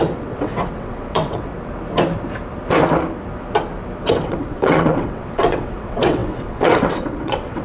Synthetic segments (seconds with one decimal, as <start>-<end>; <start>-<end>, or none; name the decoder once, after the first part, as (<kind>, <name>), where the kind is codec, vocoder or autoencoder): 0.0-1.5 (vocoder, WaveNeXt); 4.1-7.6